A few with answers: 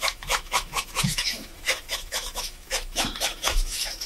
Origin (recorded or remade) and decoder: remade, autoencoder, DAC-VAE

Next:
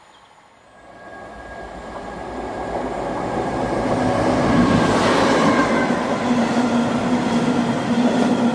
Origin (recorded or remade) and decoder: recorded